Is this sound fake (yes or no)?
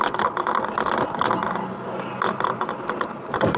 no